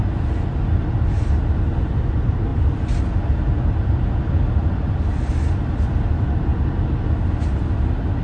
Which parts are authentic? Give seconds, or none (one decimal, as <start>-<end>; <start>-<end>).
0.0-8.2